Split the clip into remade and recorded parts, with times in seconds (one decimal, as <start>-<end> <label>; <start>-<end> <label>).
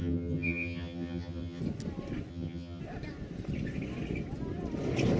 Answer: 0.0-1.6 remade; 1.6-2.3 recorded; 2.3-2.8 remade; 2.8-5.2 recorded